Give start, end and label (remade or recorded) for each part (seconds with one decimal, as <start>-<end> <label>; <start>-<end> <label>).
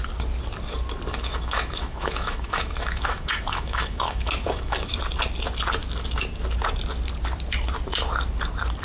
0.0-1.1 recorded; 1.1-5.0 remade; 5.0-8.8 recorded